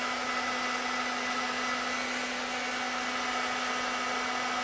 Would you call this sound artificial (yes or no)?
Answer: no